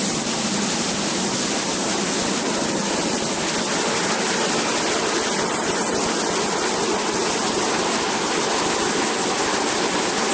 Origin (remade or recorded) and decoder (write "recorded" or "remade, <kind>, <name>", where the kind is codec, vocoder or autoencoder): recorded